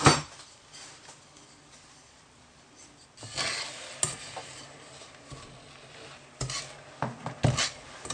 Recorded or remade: recorded